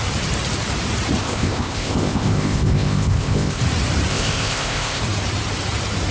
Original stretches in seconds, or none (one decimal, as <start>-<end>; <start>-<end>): 0.0-1.2; 3.6-4.1; 5.0-6.1